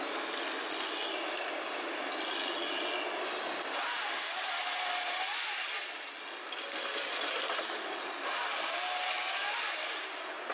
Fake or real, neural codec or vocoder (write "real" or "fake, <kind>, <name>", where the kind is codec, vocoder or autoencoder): real